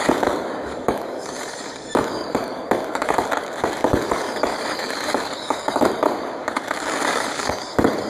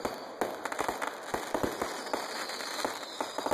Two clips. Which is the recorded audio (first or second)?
second